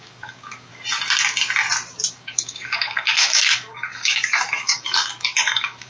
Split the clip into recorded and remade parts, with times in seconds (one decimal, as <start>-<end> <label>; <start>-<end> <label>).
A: 0.0-0.7 remade; 0.7-2.1 recorded; 2.1-5.9 remade

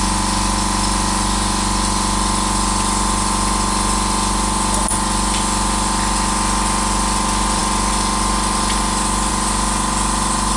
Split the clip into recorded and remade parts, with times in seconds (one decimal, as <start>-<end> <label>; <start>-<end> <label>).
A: 0.0-10.6 recorded

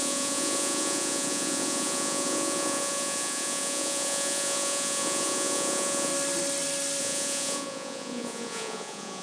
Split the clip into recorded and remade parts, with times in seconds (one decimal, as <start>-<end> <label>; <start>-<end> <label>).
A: 0.0-6.1 remade; 6.1-7.0 recorded; 7.0-9.2 remade

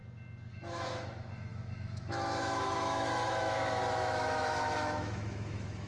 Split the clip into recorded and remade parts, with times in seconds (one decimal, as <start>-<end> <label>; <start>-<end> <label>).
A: 0.0-0.5 recorded; 0.5-5.9 remade

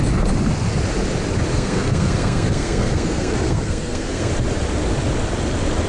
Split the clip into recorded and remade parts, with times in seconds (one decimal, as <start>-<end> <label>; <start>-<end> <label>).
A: 0.0-1.5 recorded; 1.5-4.3 remade; 4.3-5.9 recorded

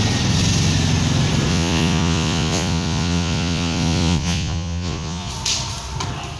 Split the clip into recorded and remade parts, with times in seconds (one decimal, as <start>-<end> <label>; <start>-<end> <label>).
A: 0.0-1.5 recorded; 1.5-5.3 remade; 5.3-6.4 recorded

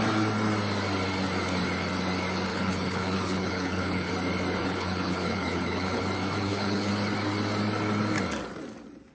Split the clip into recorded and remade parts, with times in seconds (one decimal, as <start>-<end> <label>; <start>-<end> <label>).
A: 0.0-2.5 recorded; 2.5-4.1 remade; 4.1-4.6 recorded; 4.6-6.0 remade; 6.0-6.4 recorded; 6.4-6.9 remade; 6.9-9.1 recorded